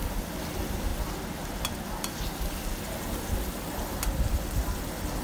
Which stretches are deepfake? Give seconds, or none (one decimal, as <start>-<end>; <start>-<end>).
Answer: none